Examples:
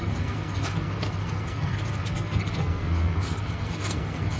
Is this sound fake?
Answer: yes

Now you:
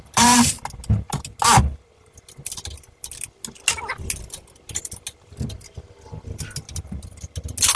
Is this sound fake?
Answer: no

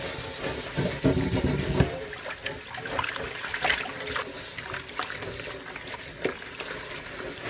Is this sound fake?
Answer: no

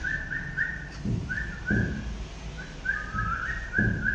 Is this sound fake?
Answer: no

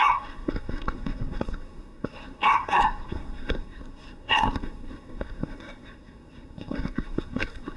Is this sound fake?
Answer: yes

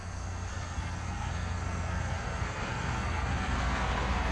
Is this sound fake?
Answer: yes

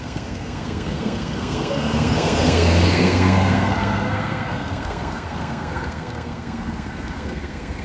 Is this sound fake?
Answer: yes